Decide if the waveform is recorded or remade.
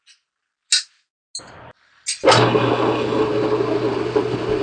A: recorded